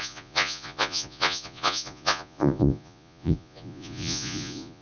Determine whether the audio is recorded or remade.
remade